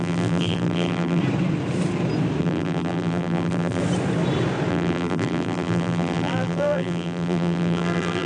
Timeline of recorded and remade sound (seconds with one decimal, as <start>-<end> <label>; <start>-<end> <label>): 0.0-1.2 remade; 1.2-2.4 recorded; 2.4-3.8 remade; 3.8-4.7 recorded; 4.7-8.3 remade